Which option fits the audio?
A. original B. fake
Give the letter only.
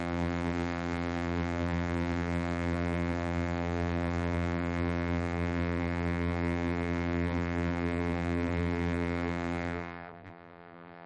B